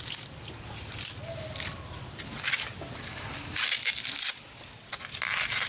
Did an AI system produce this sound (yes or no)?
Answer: no